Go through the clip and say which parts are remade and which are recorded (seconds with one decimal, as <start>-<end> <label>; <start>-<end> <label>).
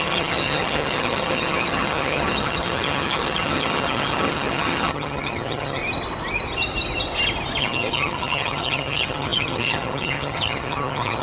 0.0-5.8 remade; 5.8-7.6 recorded; 7.6-11.2 remade